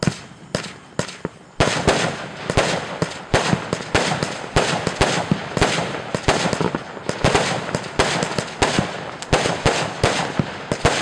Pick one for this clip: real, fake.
real